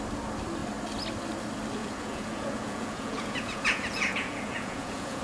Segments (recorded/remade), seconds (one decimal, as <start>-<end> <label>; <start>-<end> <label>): 0.0-1.8 recorded; 1.8-5.2 remade